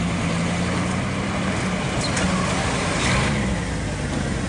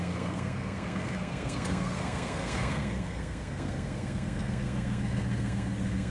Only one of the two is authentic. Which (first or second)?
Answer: first